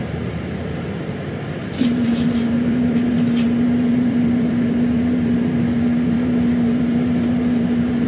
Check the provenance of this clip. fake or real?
fake